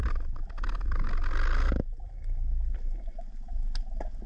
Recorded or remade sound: recorded